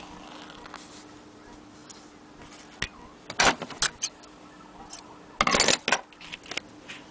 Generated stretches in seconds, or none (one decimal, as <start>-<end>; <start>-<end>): none

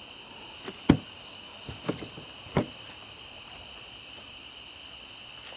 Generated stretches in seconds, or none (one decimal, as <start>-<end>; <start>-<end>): none

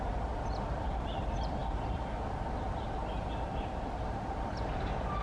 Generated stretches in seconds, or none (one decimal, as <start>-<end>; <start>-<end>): none

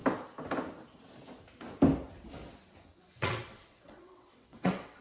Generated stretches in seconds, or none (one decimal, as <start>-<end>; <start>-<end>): 3.0-5.0

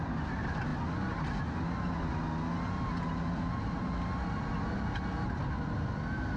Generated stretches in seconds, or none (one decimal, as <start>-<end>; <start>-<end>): none